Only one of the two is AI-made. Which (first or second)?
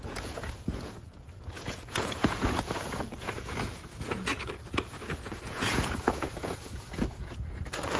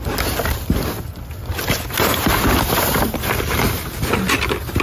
first